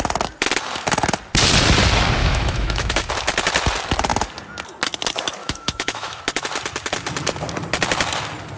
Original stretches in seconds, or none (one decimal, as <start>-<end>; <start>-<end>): 0.0-2.2; 3.1-5.4; 6.2-8.6